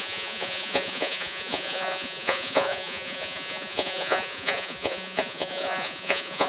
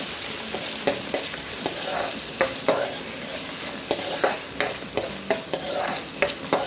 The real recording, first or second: second